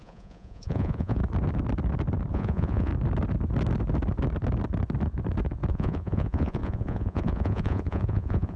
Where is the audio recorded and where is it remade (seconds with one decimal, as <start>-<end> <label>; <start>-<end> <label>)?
0.0-1.2 remade; 1.2-2.3 recorded; 2.3-2.9 remade; 2.9-5.7 recorded; 5.7-8.6 remade